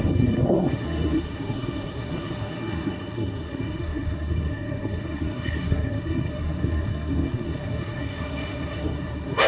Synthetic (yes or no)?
yes